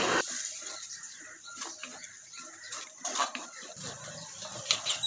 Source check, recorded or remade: recorded